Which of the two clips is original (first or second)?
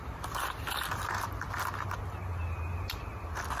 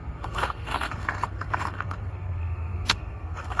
first